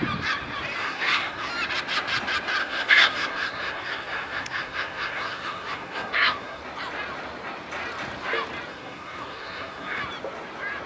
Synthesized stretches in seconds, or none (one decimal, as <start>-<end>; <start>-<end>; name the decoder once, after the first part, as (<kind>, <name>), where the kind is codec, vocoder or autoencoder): 0.8-1.5 (codec, SNAC); 2.6-6.6; 8.7-10.0